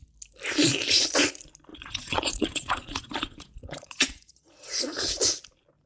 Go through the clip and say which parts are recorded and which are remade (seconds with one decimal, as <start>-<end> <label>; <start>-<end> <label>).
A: 0.0-1.7 recorded; 1.7-5.1 remade; 5.1-5.9 recorded